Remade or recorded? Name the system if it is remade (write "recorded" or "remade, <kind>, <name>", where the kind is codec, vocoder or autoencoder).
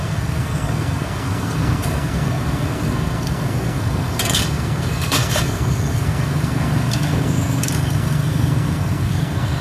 remade, codec, SNAC